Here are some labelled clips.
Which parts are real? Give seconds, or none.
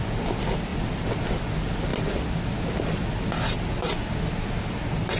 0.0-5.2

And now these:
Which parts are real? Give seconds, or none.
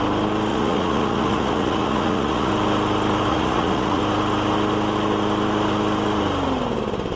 0.0-0.5; 2.5-3.3; 4.0-7.2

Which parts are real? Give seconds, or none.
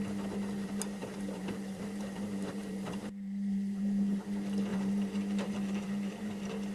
0.0-1.0; 3.8-4.7; 6.3-6.7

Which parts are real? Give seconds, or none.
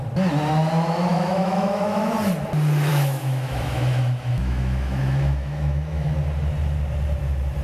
0.0-1.1; 2.1-2.9; 6.1-7.6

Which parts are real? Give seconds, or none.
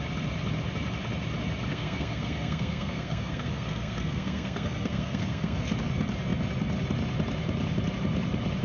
0.0-1.7; 5.7-8.6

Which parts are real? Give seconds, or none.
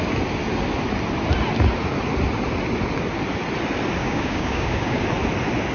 0.0-4.0; 5.0-5.7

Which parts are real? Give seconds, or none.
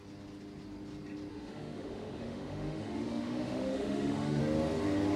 0.0-1.3; 4.4-5.2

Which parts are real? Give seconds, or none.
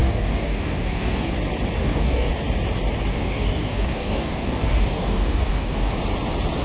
1.3-1.8; 2.3-3.1; 5.9-6.6